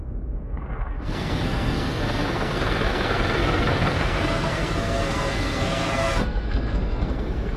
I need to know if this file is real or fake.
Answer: fake